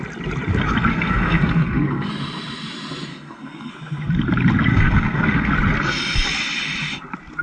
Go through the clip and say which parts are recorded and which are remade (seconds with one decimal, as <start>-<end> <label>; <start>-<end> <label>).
0.0-0.9 recorded; 0.9-2.1 remade; 2.1-3.1 recorded; 3.1-3.7 remade; 3.7-4.7 recorded; 4.7-5.5 remade; 5.5-7.4 recorded